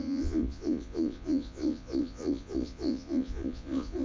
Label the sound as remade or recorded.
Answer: remade